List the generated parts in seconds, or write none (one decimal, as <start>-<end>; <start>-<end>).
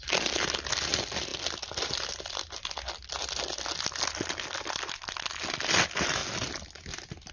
none